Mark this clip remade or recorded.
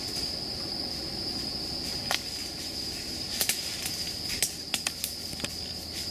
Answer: recorded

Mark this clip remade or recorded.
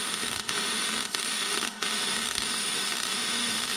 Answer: remade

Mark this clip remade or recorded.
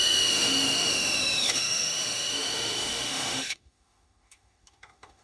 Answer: remade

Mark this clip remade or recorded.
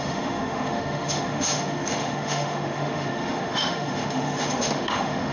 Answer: remade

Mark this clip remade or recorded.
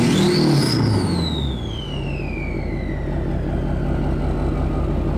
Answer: recorded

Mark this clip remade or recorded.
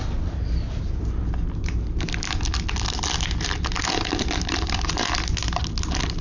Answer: recorded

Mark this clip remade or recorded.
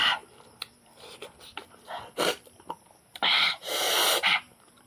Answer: recorded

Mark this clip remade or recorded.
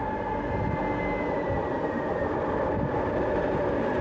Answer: recorded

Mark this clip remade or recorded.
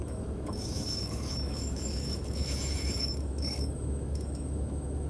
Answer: remade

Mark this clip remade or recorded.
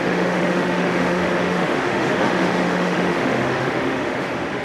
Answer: remade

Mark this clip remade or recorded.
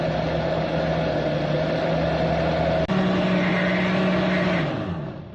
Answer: recorded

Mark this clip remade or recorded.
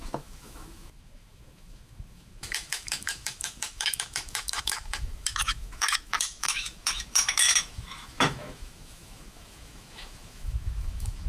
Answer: remade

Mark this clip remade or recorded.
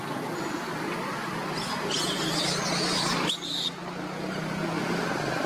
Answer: recorded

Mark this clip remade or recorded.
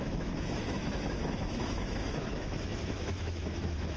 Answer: remade